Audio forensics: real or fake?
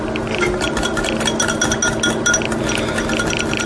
real